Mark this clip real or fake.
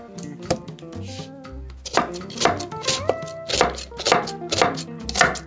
real